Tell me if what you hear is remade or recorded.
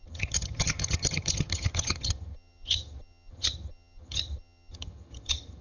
remade